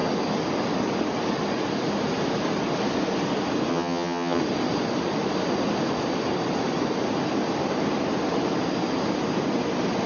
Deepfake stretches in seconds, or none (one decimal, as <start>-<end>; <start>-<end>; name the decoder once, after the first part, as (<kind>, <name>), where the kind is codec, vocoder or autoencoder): 3.7-4.4 (vocoder, HiFi-GAN)